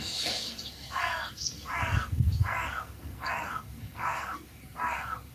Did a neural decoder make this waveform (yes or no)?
yes